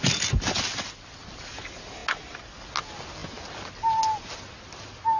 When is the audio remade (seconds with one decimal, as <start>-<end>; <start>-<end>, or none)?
none